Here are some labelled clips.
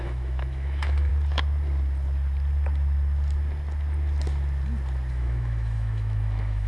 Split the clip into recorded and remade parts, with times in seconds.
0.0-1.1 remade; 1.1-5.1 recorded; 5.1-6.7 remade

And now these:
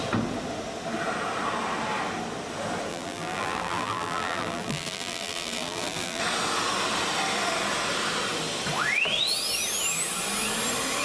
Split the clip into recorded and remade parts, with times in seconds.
0.0-2.9 recorded; 2.9-6.2 remade; 6.2-11.0 recorded

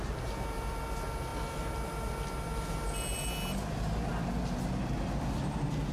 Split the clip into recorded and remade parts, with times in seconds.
0.0-5.9 recorded

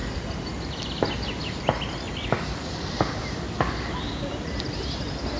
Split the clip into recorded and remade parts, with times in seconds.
0.0-5.4 recorded